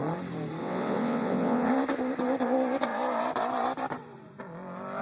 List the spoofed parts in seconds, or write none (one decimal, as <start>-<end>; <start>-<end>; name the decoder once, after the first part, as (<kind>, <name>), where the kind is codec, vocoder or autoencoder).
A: 0.6-1.7 (vocoder, WaveNeXt)